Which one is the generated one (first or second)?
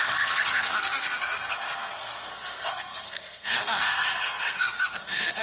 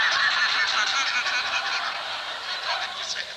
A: first